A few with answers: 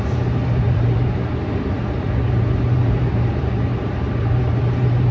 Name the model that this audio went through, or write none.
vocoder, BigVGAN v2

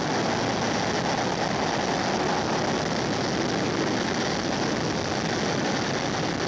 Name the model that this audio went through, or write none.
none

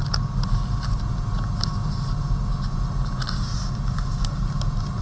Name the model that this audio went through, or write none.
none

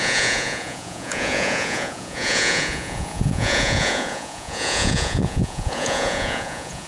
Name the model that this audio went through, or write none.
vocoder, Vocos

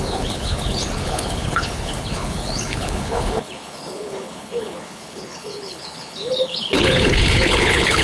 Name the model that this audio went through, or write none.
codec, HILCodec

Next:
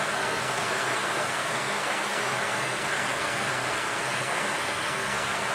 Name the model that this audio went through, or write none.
codec, SNAC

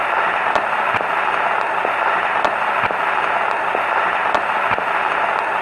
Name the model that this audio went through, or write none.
none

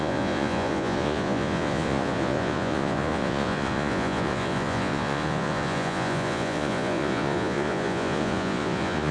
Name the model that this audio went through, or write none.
vocoder, Vocos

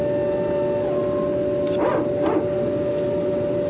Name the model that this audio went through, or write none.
none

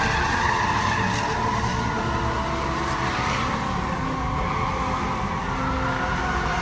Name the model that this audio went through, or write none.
none